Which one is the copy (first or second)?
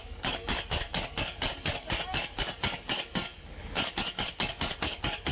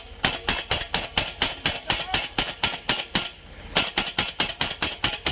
first